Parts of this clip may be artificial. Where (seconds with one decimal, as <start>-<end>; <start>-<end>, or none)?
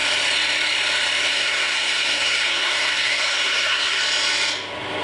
1.3-4.0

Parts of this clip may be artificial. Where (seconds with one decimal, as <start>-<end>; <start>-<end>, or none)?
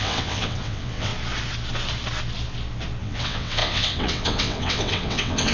0.0-1.1; 3.0-5.5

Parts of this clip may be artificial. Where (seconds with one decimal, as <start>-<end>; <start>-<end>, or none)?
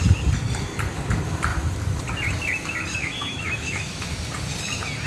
3.0-4.2